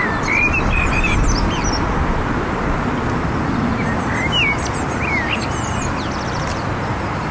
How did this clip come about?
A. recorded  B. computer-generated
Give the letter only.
A